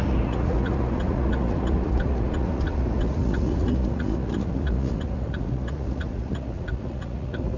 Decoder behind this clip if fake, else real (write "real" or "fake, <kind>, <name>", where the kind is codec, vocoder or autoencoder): fake, vocoder, Vocos